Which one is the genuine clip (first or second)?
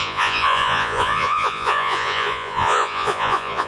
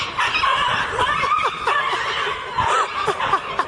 second